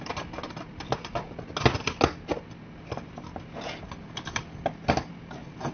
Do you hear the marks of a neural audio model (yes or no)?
no